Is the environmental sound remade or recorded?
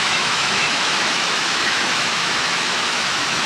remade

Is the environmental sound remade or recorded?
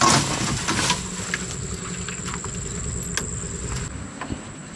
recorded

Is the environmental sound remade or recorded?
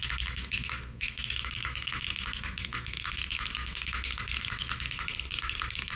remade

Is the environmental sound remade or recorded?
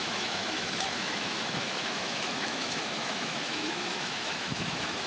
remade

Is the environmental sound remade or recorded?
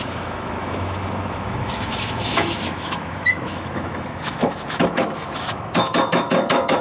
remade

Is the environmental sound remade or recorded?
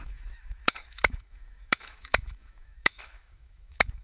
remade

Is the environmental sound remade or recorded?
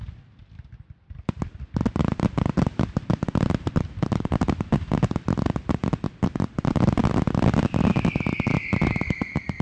recorded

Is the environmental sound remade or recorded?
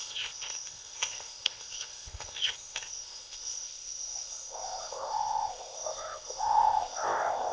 remade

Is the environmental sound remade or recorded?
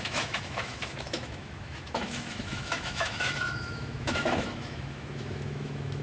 remade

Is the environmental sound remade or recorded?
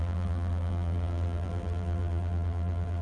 remade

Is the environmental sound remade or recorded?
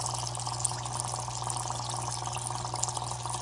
recorded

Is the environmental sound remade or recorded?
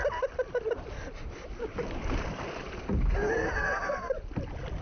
recorded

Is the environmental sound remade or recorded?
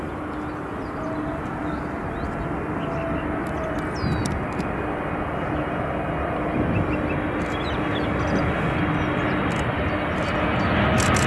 recorded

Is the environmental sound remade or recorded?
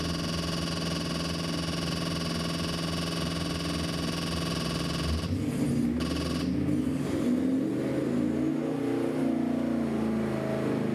recorded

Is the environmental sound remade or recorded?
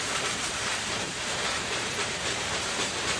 remade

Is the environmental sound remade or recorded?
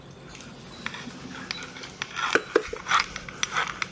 recorded